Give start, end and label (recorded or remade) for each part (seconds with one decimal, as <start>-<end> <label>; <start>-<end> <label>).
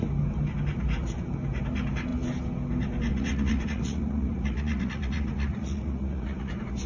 0.0-3.1 recorded; 3.1-6.5 remade; 6.5-6.9 recorded